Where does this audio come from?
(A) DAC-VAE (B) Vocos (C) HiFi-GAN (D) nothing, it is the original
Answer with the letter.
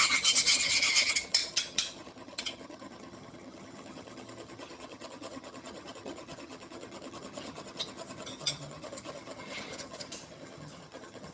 C